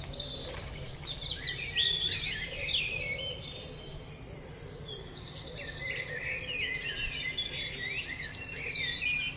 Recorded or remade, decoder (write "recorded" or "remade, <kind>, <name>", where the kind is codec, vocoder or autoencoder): remade, vocoder, BigVGAN v2